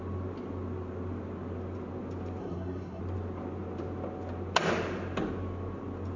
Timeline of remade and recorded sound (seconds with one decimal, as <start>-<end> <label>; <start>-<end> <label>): 0.0-2.4 recorded; 2.4-3.0 remade; 3.0-6.2 recorded